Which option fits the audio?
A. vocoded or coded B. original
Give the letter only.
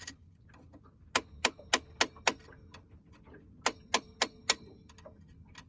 B